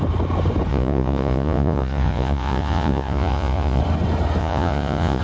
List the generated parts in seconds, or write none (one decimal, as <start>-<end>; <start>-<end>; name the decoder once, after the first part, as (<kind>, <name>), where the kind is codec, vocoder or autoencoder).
0.7-3.8 (vocoder, Vocos); 4.4-5.2

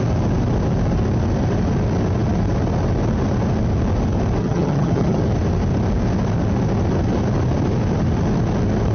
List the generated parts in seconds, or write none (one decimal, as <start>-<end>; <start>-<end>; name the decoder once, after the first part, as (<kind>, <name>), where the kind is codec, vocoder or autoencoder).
4.4-5.2 (vocoder, HiFi-GAN)

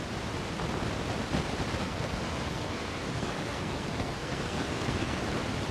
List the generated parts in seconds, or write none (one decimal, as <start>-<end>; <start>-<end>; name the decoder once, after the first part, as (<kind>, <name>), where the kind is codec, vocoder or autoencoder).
1.8-5.2 (codec, SNAC)